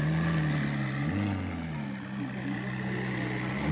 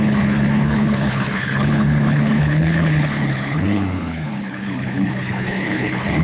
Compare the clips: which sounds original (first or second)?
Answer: first